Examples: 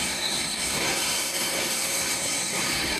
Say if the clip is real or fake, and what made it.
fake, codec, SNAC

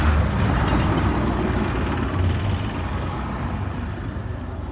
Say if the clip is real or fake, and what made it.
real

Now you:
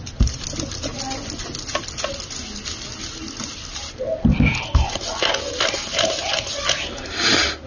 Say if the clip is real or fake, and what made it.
real